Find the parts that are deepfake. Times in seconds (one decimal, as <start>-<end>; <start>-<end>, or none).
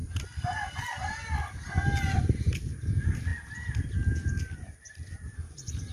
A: none